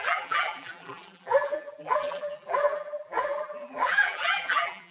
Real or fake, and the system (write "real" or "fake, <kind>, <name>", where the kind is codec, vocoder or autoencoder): fake, vocoder, BigVGAN v2